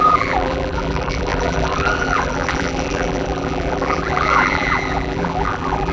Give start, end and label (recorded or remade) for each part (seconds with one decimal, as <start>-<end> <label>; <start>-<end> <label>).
0.0-5.9 remade